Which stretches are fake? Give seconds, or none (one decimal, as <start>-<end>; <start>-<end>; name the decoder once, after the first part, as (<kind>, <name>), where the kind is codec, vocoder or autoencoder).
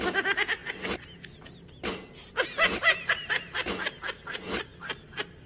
none